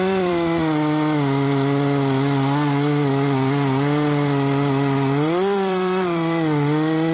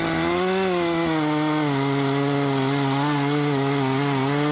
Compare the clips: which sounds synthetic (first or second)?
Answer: first